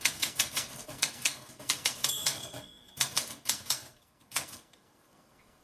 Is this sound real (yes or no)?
no